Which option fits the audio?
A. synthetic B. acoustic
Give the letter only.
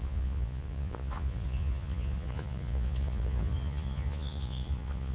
A